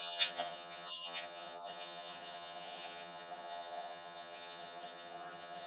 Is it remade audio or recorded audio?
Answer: remade